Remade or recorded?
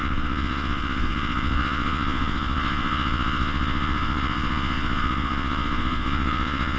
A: remade